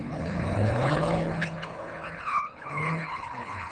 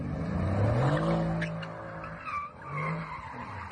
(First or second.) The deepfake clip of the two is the first